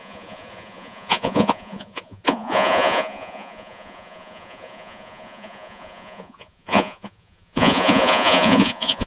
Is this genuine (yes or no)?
no